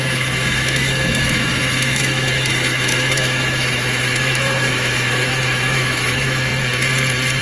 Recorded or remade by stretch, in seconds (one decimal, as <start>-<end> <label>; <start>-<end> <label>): 0.0-6.5 remade; 6.5-7.4 recorded